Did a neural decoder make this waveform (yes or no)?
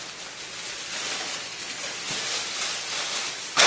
no